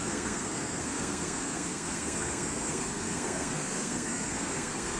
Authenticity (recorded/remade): remade